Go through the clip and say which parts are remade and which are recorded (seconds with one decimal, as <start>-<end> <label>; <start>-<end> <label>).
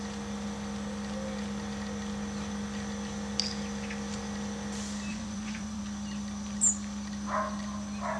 0.0-5.1 recorded; 5.1-5.8 remade; 5.8-8.2 recorded